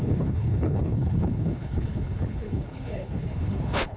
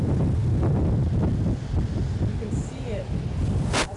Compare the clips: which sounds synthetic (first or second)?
first